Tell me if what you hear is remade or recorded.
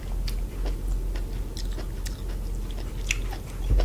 recorded